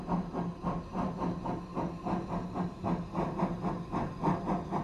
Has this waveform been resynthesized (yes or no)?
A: no